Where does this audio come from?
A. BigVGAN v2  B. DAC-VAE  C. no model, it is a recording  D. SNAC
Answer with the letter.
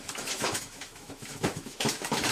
B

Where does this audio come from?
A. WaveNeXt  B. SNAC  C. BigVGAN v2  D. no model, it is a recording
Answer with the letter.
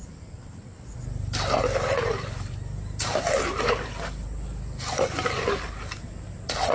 D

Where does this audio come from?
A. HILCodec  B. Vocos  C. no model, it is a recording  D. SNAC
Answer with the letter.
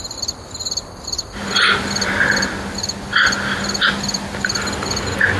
C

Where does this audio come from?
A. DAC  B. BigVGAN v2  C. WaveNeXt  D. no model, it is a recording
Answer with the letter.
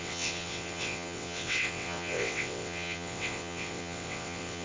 C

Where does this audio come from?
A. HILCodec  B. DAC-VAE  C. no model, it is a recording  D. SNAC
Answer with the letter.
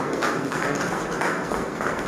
D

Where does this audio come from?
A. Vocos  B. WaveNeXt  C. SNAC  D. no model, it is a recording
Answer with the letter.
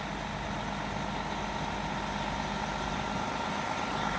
D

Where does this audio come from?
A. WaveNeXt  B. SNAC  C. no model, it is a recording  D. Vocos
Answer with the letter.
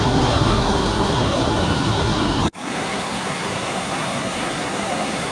B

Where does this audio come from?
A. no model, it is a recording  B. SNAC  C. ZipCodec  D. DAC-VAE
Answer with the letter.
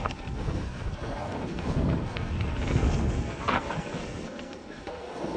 B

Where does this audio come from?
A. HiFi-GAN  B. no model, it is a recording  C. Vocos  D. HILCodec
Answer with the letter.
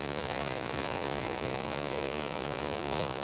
C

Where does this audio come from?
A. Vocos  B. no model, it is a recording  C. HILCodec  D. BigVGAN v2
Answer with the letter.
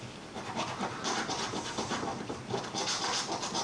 D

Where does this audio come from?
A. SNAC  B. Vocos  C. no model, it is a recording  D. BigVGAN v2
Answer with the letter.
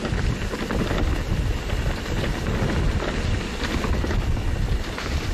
C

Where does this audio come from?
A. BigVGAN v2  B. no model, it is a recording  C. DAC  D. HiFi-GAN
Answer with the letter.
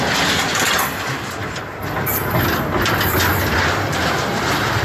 B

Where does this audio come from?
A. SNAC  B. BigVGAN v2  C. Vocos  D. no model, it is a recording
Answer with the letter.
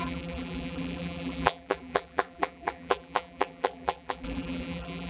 B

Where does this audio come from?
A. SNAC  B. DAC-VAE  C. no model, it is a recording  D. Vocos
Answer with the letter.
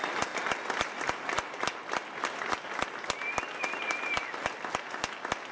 C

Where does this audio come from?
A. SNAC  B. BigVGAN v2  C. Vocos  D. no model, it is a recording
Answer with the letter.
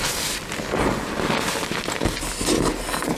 D